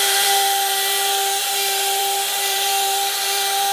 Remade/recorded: remade